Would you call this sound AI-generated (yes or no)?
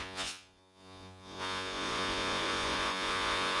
yes